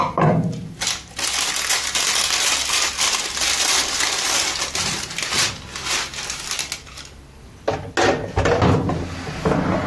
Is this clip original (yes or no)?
yes